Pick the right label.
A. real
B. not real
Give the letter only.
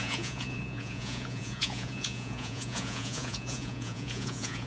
B